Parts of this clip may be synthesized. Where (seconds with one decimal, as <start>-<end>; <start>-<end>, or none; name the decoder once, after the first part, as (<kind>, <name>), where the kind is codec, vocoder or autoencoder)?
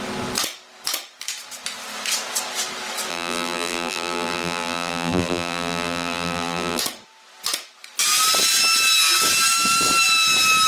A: 3.1-6.8 (vocoder, BigVGAN v2)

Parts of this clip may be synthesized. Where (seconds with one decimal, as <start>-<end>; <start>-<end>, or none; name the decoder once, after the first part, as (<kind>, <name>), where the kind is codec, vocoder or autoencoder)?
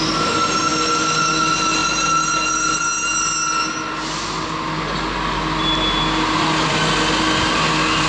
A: none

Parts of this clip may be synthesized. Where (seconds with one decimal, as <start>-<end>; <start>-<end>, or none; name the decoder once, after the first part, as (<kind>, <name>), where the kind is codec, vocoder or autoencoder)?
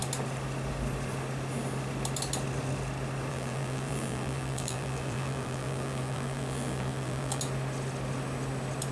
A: 3.3-7.4 (vocoder, BigVGAN v2)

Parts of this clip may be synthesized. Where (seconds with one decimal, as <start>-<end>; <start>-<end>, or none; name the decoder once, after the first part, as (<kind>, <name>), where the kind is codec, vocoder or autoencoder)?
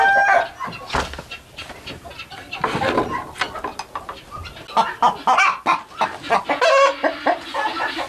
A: none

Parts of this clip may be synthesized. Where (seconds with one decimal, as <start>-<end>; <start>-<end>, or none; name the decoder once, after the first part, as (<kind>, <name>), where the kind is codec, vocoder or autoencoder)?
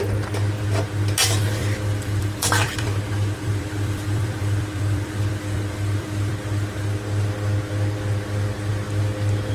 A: 1.6-6.8 (vocoder, BigVGAN v2)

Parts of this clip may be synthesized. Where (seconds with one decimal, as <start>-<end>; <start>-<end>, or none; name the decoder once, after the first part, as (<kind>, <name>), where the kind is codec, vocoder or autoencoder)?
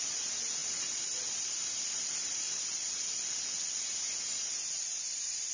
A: 0.6-3.9 (vocoder, BigVGAN v2)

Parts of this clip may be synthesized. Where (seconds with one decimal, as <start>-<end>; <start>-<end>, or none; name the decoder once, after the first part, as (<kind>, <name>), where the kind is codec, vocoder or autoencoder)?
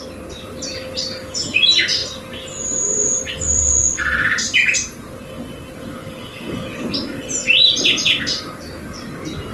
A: 2.0-3.7 (vocoder, BigVGAN v2)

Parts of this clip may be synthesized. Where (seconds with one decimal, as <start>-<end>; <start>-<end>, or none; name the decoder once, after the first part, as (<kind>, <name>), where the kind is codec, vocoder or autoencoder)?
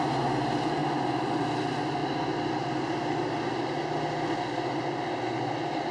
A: 0.8-1.4 (vocoder, BigVGAN v2)